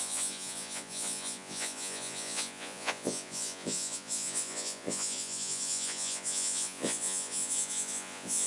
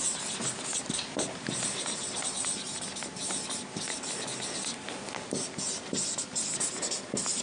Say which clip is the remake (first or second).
first